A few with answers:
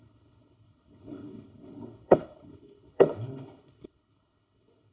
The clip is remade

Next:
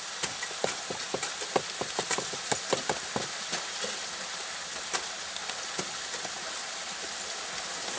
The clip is recorded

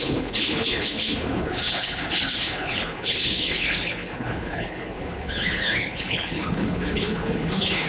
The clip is remade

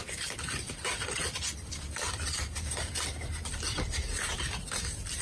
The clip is recorded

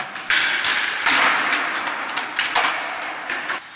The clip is recorded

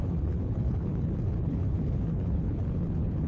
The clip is remade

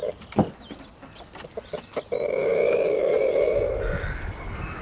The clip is recorded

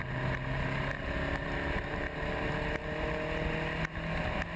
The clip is recorded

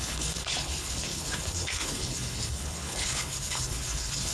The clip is remade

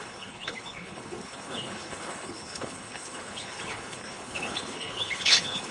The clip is remade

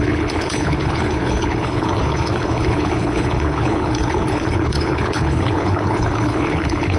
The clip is remade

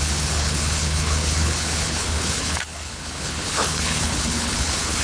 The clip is remade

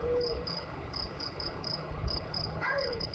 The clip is remade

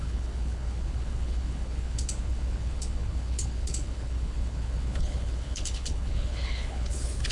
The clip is remade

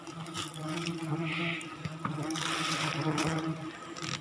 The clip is recorded